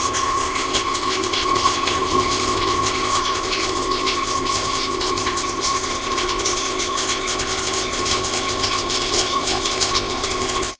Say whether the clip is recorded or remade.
remade